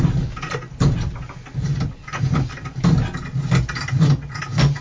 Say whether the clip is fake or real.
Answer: real